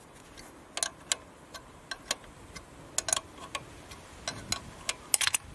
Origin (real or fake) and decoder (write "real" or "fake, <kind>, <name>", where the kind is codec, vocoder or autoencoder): real